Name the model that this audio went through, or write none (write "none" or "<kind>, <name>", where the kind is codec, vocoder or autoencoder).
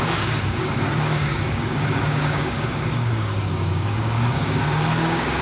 codec, DAC